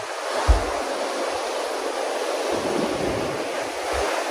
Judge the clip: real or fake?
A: real